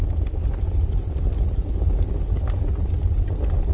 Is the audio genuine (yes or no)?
yes